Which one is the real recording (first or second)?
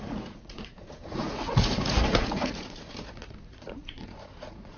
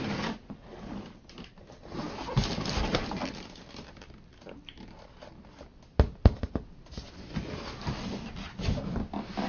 second